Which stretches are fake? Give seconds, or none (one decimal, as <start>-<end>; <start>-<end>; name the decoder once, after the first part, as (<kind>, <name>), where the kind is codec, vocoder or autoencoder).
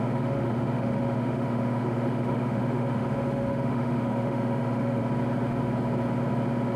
0.0-5.0 (autoencoder, DAC-VAE)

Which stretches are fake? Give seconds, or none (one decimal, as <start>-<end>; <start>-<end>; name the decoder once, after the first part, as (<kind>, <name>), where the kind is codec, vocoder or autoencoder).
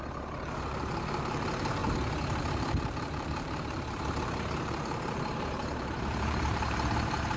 0.0-1.8 (vocoder, BigVGAN v2); 2.4-7.4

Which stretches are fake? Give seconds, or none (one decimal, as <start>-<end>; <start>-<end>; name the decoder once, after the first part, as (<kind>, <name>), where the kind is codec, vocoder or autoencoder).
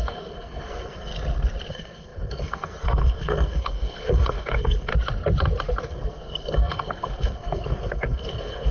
0.0-1.1 (codec, SNAC); 1.7-4.9; 5.8-8.7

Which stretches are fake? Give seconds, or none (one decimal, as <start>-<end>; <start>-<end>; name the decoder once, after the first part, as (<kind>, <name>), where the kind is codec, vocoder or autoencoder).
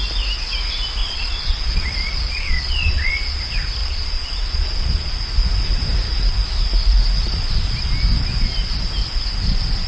1.0-3.4 (vocoder, Vocos); 3.8-5.1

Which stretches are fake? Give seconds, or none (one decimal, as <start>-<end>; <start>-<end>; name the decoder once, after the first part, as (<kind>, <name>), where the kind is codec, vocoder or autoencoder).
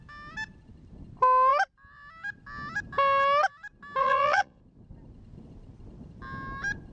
4.0-4.6 (vocoder, Vocos)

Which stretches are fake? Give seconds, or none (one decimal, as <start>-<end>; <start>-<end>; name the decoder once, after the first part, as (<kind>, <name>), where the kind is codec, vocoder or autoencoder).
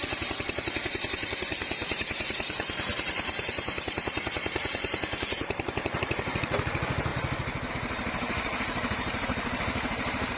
0.0-7.1 (vocoder, BigVGAN v2); 7.7-10.4